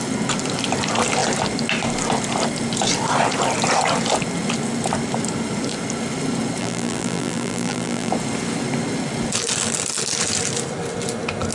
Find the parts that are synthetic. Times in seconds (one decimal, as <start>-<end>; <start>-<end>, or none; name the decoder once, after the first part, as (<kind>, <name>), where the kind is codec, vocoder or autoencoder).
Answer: 6.6-8.1 (vocoder, BigVGAN v2)